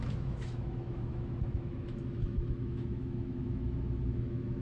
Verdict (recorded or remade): remade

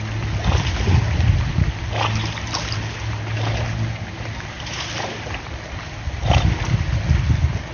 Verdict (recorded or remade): recorded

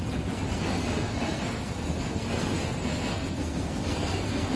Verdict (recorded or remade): remade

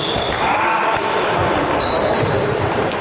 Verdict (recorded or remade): remade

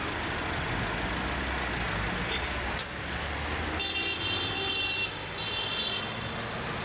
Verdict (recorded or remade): recorded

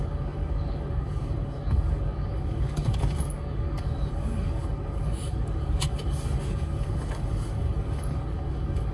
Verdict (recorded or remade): remade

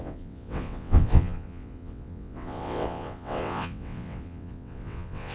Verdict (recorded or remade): remade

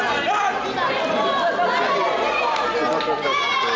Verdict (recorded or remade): recorded